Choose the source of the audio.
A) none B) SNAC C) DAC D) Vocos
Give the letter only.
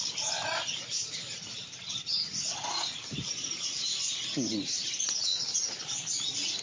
A